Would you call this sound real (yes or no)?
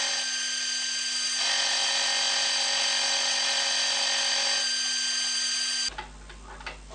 yes